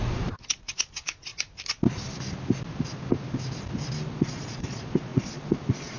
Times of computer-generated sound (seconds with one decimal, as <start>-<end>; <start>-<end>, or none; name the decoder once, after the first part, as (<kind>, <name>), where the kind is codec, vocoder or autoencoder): 0.0-1.3 (vocoder, Vocos); 4.1-6.0